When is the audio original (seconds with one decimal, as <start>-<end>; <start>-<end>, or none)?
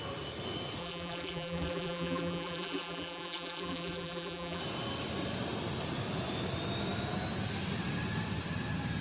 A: 0.0-0.8; 4.6-9.0